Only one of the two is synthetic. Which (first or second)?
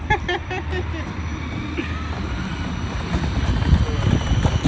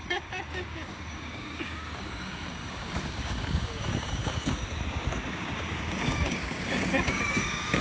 second